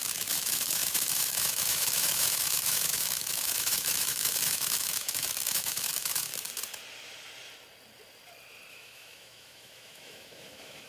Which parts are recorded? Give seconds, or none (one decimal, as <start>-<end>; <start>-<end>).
6.3-8.7